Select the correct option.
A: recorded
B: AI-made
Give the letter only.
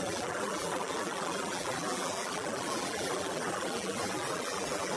B